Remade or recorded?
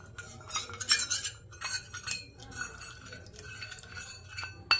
recorded